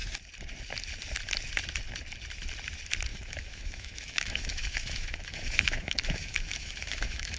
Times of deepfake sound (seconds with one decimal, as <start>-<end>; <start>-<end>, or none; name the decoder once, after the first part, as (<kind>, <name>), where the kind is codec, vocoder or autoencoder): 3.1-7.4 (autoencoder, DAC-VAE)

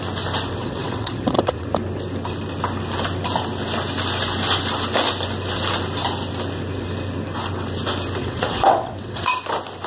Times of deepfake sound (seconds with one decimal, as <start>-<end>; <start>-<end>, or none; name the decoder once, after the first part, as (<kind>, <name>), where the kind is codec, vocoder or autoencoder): 0.6-1.7 (vocoder, WaveNeXt); 8.2-9.3

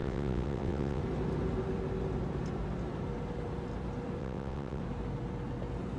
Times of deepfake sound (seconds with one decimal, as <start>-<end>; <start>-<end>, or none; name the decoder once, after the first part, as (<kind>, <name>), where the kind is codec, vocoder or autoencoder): 0.0-1.0 (vocoder, WaveNeXt); 4.2-4.8